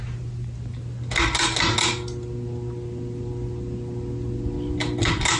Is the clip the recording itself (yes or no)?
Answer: yes